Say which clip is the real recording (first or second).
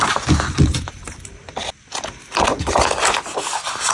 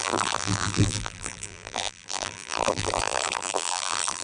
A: first